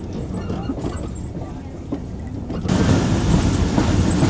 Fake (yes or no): no